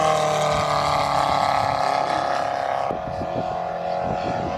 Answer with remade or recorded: recorded